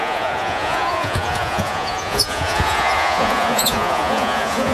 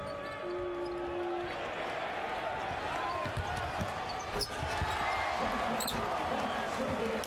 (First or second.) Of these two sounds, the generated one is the first